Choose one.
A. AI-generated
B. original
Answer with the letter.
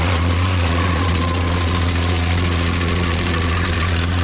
A